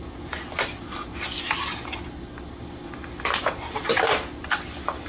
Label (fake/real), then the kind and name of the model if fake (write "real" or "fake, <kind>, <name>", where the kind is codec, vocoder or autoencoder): real